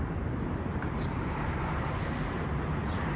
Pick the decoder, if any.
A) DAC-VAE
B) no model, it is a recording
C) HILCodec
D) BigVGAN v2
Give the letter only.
D